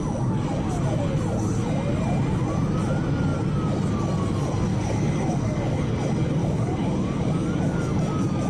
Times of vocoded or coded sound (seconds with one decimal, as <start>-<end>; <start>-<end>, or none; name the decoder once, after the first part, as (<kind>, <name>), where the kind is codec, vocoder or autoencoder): 4.7-5.9 (codec, DAC); 6.4-7.8